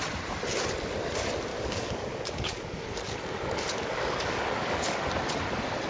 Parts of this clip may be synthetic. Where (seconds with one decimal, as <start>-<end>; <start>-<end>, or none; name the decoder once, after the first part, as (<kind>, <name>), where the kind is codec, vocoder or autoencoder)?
1.5-5.0 (codec, DAC)